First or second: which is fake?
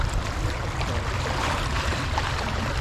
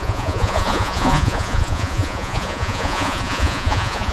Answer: second